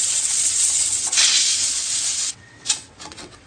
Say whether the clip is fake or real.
fake